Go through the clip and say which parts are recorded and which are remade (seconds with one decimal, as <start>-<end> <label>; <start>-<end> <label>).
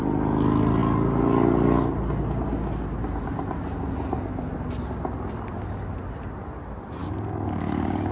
0.0-7.0 recorded; 7.0-8.1 remade